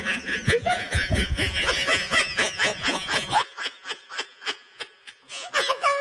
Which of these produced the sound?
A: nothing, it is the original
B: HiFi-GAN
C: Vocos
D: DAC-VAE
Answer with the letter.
C